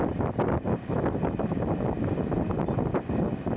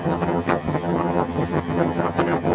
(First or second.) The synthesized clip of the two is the second